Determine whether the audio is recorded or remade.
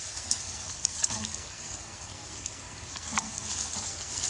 remade